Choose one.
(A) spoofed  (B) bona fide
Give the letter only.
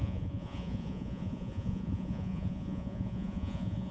A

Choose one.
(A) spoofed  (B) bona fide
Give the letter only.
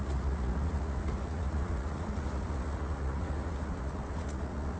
A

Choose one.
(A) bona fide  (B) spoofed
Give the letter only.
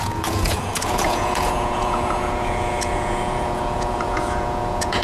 B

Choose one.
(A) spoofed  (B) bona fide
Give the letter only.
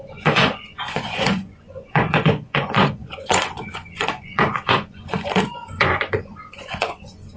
A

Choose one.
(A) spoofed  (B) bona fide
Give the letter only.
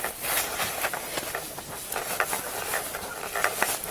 B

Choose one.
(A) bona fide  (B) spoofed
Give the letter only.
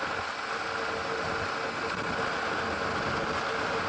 A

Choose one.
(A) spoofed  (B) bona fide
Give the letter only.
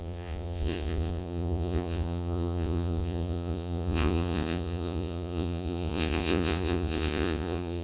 A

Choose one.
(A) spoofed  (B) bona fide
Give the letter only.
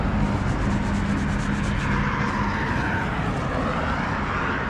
B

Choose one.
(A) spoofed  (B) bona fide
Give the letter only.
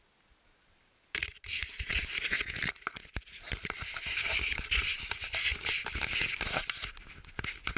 B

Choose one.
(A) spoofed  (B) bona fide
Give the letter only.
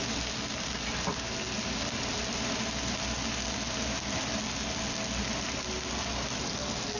B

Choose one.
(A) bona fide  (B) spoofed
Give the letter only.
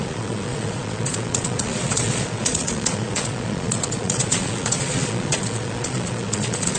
B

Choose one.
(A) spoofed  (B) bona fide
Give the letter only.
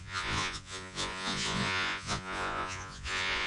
A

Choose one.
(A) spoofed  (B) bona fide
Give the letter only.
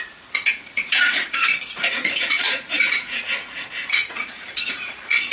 A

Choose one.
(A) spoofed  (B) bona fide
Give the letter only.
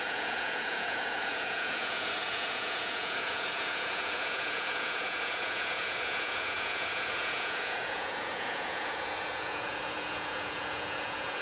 A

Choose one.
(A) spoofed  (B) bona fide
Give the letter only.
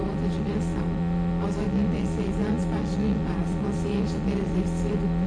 A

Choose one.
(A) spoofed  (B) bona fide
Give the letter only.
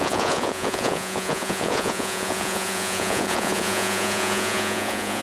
A